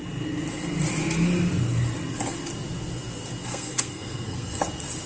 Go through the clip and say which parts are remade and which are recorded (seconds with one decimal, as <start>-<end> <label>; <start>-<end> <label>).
0.0-3.5 recorded; 3.5-4.6 remade; 4.6-5.1 recorded